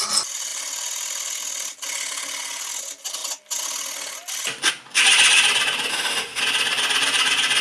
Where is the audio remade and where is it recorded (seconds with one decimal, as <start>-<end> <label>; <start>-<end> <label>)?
0.0-5.9 recorded; 5.9-6.4 remade; 6.4-7.6 recorded